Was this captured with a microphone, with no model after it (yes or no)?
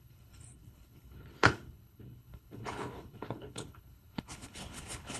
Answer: no